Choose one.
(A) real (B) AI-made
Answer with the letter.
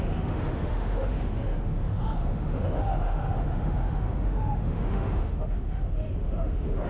B